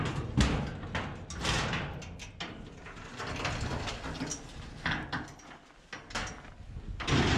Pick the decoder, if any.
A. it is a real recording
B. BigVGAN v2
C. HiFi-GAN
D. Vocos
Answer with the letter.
A